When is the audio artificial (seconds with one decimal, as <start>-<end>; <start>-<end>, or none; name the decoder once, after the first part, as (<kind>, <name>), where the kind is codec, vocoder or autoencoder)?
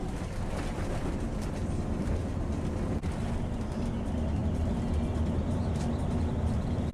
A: none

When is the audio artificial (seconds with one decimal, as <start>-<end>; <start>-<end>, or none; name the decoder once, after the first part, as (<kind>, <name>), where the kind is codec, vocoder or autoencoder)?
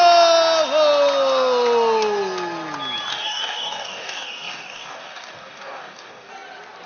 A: 3.1-6.3 (codec, DAC)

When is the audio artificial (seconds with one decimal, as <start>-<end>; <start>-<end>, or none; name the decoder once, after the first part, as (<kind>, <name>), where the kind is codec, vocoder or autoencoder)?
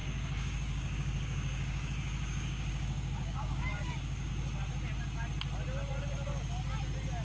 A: 0.0-4.3 (codec, DAC)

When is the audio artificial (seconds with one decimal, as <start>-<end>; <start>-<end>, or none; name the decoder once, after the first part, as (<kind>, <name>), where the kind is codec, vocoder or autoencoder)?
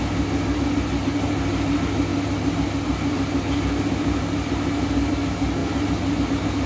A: none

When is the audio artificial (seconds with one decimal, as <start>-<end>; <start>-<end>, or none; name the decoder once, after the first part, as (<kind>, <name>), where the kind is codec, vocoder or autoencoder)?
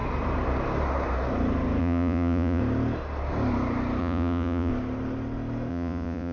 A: 1.8-2.6 (vocoder, Vocos); 4.0-4.7; 5.7-6.3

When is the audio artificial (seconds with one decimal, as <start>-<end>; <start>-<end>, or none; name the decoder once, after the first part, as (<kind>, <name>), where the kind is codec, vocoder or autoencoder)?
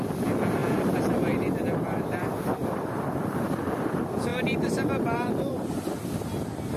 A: 0.6-3.0 (vocoder, BigVGAN v2); 4.3-5.9